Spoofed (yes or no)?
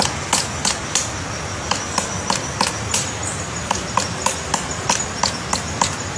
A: no